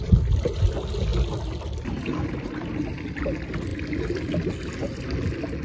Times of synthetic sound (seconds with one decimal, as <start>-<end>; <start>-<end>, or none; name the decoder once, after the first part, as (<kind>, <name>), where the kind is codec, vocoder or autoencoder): none